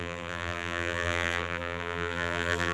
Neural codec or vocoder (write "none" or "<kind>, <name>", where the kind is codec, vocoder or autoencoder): vocoder, BigVGAN v2